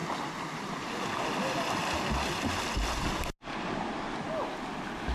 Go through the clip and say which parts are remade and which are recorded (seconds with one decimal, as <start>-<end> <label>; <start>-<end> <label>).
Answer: 0.0-5.1 recorded